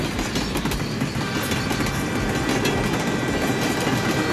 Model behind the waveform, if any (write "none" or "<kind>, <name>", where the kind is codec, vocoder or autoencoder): none